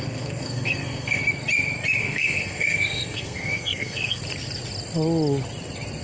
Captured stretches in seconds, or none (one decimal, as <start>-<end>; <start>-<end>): 1.2-2.0; 4.2-6.0